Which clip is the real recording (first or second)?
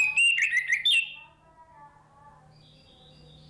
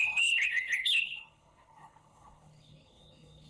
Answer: first